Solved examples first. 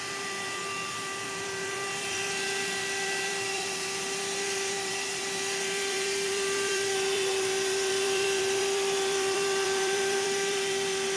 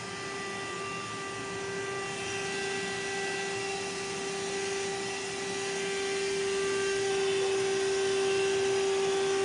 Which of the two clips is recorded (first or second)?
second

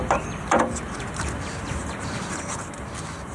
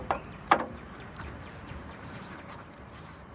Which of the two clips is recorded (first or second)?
first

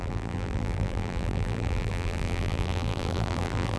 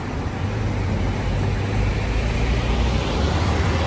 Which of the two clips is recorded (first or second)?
second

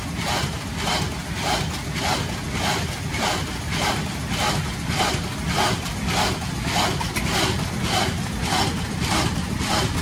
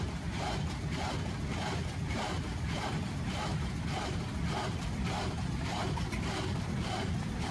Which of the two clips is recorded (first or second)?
first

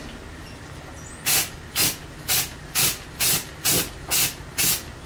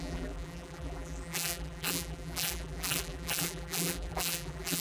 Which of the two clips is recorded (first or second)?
first